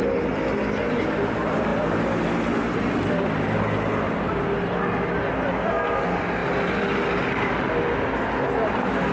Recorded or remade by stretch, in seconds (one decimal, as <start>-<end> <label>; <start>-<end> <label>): 0.0-9.1 recorded